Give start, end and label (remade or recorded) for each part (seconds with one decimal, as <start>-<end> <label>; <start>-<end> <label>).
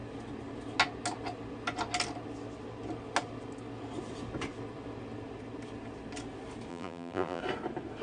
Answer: 0.0-6.7 recorded; 6.7-7.4 remade; 7.4-8.0 recorded